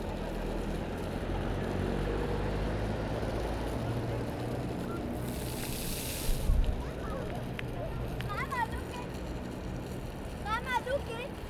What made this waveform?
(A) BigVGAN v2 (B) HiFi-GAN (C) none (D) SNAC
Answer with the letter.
C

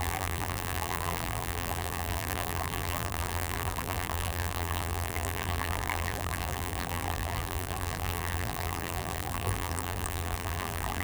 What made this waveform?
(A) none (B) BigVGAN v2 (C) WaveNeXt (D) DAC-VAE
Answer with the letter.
B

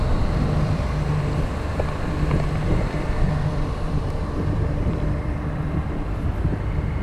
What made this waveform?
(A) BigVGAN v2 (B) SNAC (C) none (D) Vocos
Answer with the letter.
A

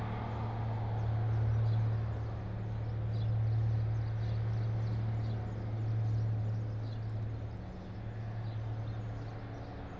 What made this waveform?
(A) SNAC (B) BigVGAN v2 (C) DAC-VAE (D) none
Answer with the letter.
D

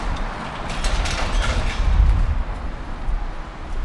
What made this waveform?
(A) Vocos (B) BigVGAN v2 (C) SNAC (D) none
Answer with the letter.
D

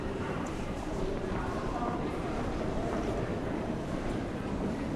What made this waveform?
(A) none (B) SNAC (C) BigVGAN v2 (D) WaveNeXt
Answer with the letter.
C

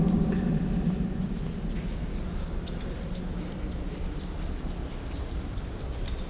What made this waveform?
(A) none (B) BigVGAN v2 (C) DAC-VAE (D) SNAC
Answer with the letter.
A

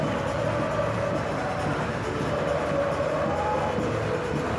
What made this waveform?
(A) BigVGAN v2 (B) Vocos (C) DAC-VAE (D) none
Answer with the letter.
D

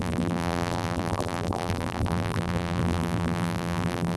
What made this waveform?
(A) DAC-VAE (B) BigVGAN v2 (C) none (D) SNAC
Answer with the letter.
B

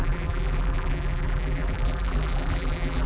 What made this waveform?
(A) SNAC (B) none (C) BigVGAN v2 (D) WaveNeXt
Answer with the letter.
C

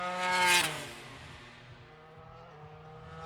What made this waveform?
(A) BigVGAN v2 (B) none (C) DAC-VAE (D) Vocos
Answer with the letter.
B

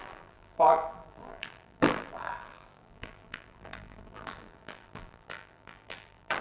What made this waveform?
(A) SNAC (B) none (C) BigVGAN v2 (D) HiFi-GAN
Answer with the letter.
C